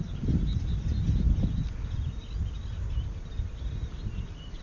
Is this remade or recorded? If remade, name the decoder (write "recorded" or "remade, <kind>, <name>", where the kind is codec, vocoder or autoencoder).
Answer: recorded